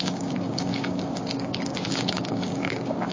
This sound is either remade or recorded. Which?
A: remade